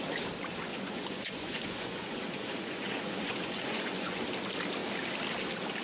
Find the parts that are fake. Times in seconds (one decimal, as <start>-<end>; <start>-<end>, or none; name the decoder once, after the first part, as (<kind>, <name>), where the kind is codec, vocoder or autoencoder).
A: 0.7-4.2 (vocoder, Vocos)